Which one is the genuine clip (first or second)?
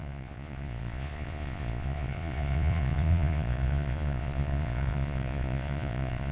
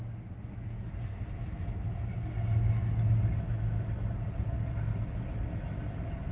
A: second